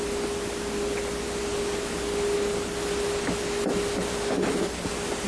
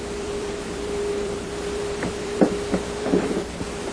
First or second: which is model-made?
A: second